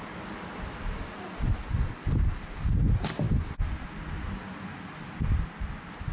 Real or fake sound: real